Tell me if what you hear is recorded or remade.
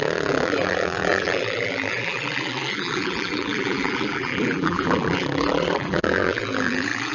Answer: remade